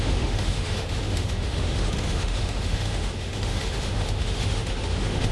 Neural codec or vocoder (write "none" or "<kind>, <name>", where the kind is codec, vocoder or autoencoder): autoencoder, DAC-VAE